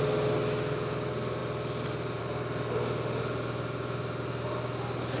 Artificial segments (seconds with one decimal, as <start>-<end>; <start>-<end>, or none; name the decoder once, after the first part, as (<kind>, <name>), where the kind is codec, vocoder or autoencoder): none